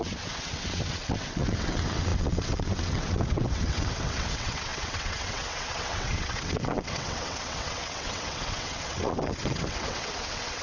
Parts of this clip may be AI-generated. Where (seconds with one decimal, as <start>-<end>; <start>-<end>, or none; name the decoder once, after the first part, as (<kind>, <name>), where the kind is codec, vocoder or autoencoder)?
0.0-10.6 (vocoder, WaveNeXt)